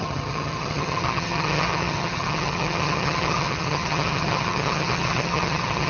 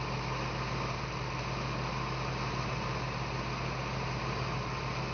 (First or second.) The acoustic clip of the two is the second